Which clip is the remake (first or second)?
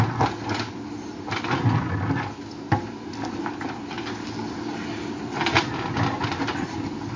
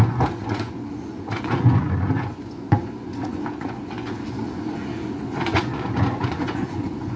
second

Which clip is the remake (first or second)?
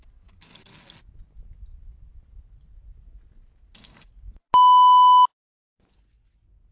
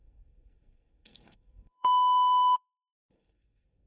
second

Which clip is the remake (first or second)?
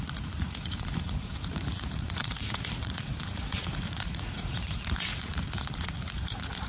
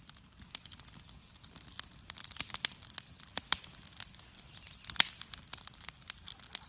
first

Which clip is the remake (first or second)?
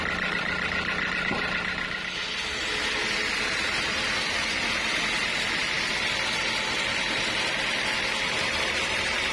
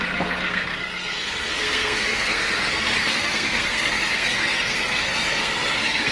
second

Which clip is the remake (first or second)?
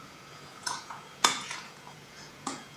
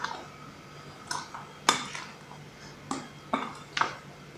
first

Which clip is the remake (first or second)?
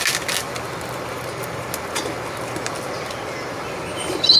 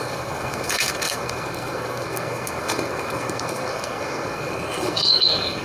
second